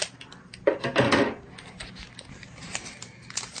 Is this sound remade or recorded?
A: recorded